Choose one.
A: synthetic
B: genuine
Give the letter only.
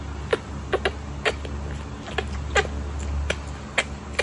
B